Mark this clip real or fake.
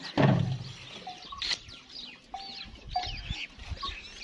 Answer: real